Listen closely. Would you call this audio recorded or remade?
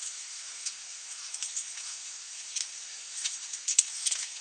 remade